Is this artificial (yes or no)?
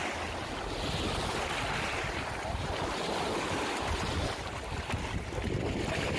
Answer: no